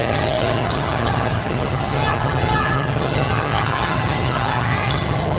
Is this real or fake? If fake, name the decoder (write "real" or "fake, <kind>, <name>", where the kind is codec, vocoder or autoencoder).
fake, vocoder, HiFi-GAN